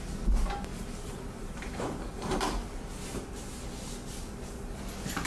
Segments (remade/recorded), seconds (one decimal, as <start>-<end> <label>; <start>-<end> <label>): 0.0-0.7 recorded; 0.7-3.9 remade; 3.9-5.3 recorded